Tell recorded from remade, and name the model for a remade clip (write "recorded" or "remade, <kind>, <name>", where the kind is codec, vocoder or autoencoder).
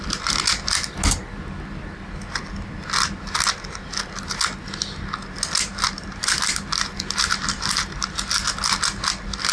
recorded